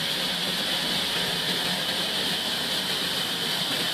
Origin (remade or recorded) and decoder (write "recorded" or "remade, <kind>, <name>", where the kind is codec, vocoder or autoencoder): recorded